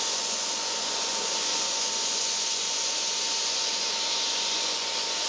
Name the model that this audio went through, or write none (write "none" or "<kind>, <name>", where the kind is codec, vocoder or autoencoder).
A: vocoder, Vocos